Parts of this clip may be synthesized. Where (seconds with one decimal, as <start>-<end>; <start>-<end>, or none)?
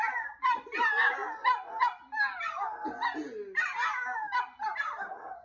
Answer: none